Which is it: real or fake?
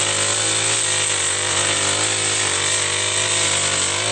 real